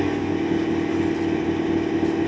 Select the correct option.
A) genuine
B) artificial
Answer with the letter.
A